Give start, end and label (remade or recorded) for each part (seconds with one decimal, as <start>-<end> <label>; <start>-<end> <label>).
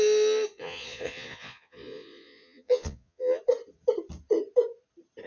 0.0-0.5 recorded; 0.5-3.4 remade; 3.4-5.3 recorded